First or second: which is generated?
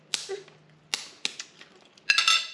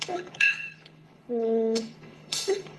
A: second